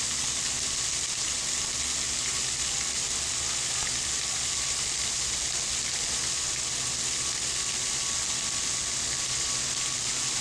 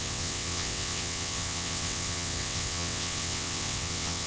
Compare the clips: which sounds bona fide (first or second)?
first